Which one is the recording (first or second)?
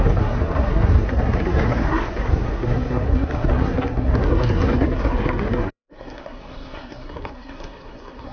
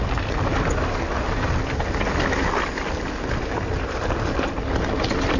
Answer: second